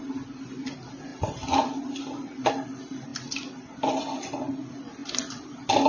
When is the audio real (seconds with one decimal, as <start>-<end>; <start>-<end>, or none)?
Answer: 0.0-5.9